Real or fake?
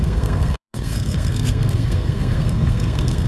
fake